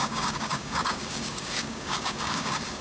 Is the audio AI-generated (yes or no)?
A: yes